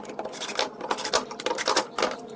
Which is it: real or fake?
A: fake